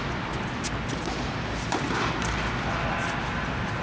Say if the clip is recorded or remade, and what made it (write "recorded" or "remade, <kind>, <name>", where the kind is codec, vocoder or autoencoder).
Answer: recorded